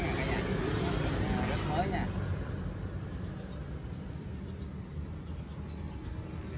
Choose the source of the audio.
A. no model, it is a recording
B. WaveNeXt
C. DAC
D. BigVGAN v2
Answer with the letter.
A